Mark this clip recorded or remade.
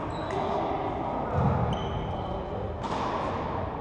recorded